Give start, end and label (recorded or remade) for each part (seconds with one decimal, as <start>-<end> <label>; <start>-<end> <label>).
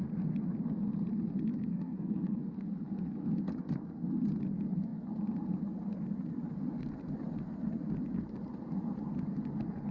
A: 0.0-1.7 recorded; 1.7-2.4 remade; 2.4-9.9 recorded